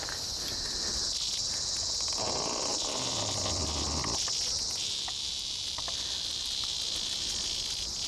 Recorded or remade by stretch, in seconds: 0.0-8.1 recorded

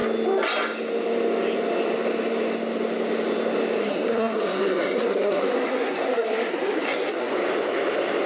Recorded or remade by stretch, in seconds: 0.0-3.8 recorded; 3.8-7.3 remade; 7.3-8.3 recorded

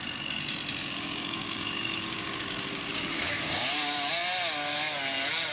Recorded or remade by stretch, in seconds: 0.0-0.8 recorded; 0.8-4.1 remade; 4.1-5.5 recorded

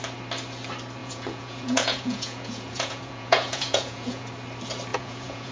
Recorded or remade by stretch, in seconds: 0.0-1.0 recorded; 1.0-4.3 remade; 4.3-4.9 recorded; 4.9-5.5 remade